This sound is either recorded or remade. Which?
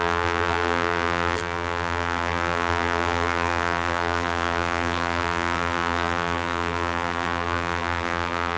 remade